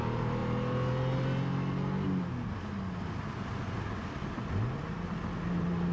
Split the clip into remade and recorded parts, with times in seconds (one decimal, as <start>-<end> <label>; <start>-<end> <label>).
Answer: 0.0-5.9 recorded